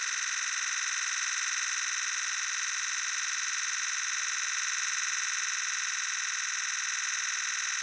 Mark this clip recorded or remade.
recorded